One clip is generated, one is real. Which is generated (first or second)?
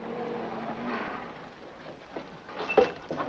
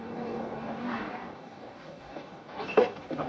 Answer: second